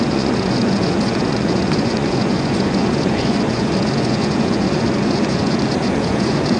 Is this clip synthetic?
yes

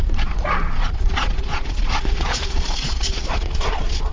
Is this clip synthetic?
yes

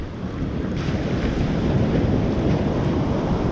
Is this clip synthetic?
no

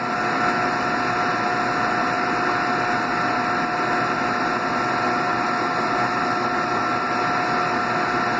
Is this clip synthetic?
no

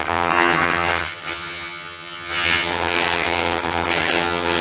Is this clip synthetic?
yes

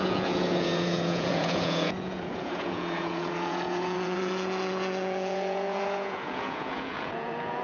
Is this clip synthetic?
yes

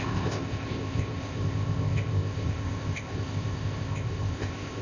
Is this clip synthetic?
yes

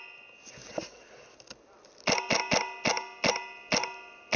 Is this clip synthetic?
no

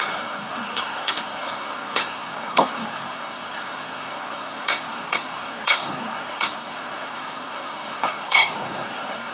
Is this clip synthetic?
yes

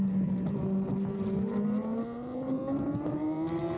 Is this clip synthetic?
no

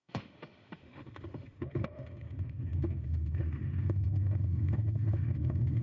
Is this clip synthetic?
yes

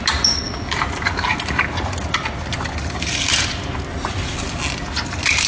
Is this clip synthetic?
no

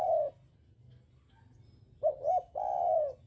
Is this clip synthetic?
no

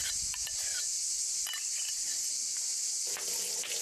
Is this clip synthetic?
no